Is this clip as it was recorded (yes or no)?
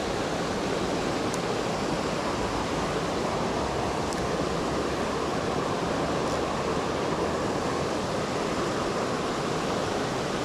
yes